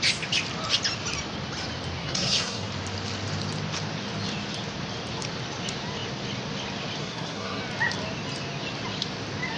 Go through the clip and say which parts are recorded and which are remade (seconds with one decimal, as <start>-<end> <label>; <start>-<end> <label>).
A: 0.0-2.0 recorded; 2.0-2.7 remade; 2.7-7.0 recorded; 7.0-7.6 remade; 7.6-9.6 recorded